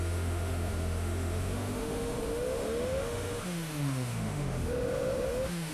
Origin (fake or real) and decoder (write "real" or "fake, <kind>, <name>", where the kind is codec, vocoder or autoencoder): fake, autoencoder, DAC-VAE